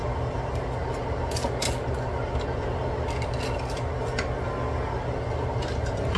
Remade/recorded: recorded